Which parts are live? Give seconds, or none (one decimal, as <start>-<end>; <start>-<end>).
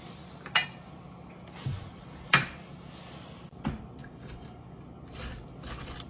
0.0-4.0; 4.8-6.1